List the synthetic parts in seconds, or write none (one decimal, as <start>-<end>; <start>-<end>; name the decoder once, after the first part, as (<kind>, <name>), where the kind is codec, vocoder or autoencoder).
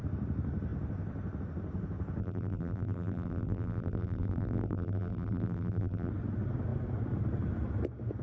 2.2-6.1 (vocoder, BigVGAN v2)